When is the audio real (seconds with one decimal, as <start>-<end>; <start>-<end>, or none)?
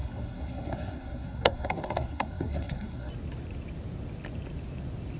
3.1-5.2